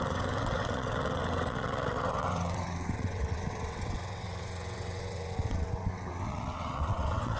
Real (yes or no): no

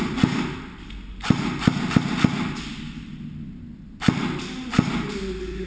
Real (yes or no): yes